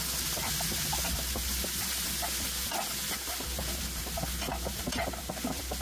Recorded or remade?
recorded